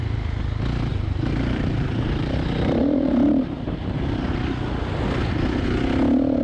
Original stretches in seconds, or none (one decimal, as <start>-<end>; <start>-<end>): 0.0-0.9; 3.9-6.4